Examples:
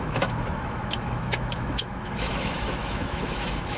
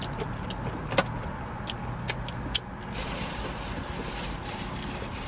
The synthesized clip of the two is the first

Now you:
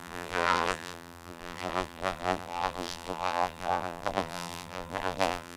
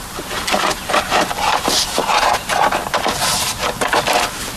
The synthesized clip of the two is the first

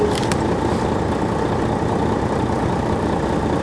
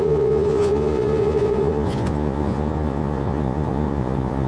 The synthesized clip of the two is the second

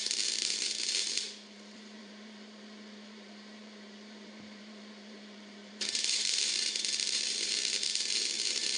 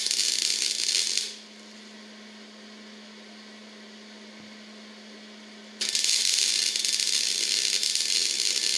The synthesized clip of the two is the first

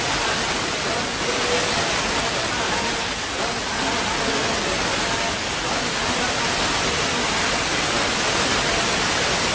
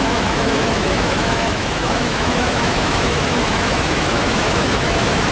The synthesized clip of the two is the second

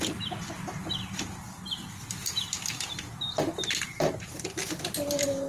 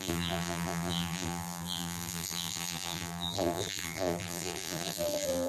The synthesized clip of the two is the second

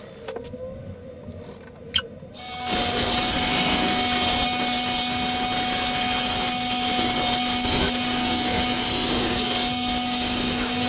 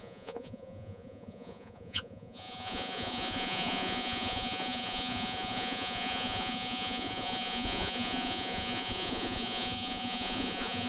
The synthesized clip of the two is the second